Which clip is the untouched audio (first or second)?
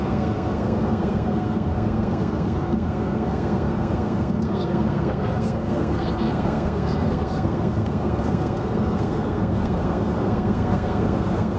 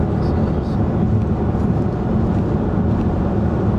second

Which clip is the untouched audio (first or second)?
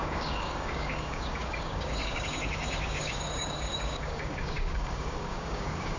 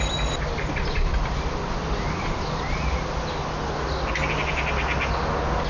second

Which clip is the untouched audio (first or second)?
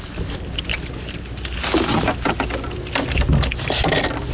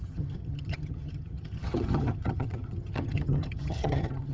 first